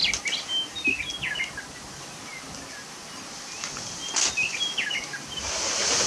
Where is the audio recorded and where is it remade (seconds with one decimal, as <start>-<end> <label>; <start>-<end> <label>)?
0.0-6.1 recorded